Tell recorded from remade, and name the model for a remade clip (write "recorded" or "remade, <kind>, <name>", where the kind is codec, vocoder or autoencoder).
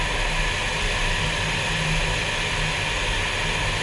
recorded